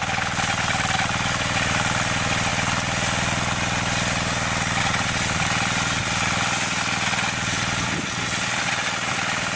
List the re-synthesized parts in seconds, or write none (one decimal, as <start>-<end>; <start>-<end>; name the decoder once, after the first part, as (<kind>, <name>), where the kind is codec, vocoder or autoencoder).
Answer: none